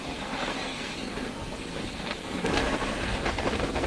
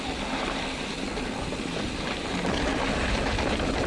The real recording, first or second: second